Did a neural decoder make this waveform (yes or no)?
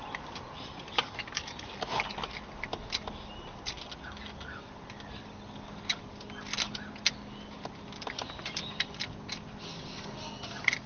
no